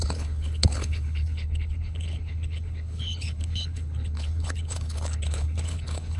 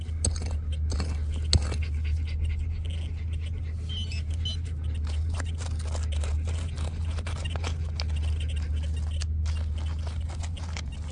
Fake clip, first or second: first